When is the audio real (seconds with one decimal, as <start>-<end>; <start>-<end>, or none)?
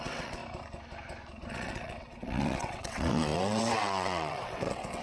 0.4-1.5